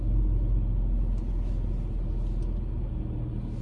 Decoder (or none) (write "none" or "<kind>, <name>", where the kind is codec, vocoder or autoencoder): none